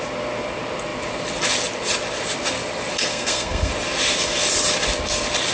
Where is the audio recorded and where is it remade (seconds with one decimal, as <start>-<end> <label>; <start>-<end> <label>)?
0.0-3.1 recorded; 3.1-3.7 remade; 3.7-5.5 recorded